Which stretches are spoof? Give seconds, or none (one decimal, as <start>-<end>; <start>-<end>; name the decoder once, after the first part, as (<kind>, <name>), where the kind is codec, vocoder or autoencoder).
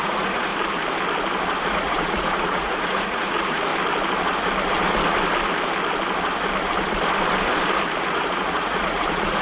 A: 0.0-0.5 (vocoder, Vocos); 1.6-3.7; 8.0-9.4